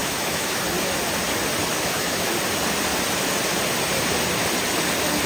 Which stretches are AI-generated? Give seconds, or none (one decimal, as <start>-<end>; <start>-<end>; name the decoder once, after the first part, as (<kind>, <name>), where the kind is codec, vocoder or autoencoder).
0.0-0.6 (autoencoder, DAC-VAE); 1.7-2.3